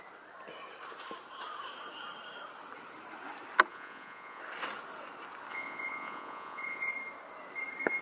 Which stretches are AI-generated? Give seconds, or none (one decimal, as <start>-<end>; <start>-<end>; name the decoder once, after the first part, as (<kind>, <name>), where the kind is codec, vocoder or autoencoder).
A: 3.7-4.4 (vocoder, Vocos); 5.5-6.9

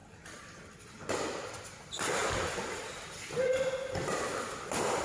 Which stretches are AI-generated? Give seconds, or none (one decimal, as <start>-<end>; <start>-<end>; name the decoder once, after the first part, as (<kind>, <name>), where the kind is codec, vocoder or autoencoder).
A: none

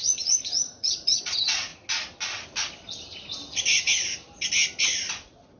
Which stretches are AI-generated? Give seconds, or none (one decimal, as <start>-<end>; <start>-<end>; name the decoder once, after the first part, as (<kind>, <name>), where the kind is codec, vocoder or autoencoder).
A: 0.0-1.7 (vocoder, Vocos); 5.1-5.6

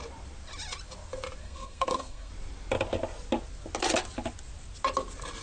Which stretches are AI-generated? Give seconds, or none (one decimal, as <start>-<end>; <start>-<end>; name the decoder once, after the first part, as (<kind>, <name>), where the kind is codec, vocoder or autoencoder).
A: 1.4-2.3 (codec, SNAC)

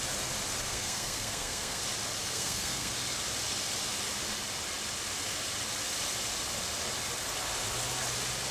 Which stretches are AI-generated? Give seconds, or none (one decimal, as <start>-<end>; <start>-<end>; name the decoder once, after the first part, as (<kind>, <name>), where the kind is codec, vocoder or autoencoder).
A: 0.7-1.8 (codec, SNAC); 2.2-2.9

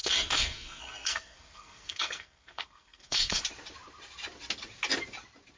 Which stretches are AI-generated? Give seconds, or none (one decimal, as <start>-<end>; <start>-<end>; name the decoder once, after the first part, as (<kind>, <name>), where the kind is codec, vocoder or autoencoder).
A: 0.0-3.4 (codec, SNAC)

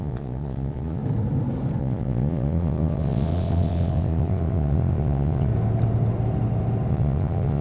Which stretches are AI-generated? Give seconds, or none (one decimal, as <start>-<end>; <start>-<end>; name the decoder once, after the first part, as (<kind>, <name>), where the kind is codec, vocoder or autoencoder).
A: 0.0-1.0 (vocoder, Vocos); 1.8-5.5; 6.9-7.6